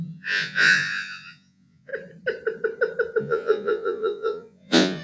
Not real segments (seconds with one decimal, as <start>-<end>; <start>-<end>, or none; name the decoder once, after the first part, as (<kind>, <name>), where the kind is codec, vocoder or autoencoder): 0.0-1.9 (vocoder, Vocos); 3.2-5.0